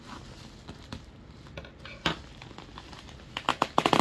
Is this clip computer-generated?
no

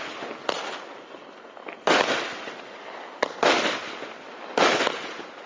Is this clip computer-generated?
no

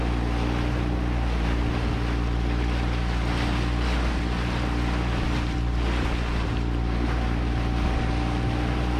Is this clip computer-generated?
no